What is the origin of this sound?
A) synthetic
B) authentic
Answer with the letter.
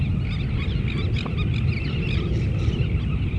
B